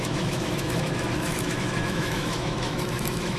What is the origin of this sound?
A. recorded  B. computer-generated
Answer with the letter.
B